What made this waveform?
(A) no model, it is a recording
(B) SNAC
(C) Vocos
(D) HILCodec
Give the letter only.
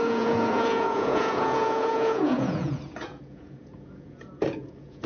C